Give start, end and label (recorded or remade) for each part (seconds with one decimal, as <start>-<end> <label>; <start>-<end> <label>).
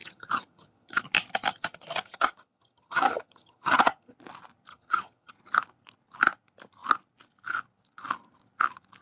0.0-1.0 remade; 1.0-1.5 recorded; 1.5-4.1 remade; 4.1-4.7 recorded; 4.7-5.3 remade; 5.3-9.0 recorded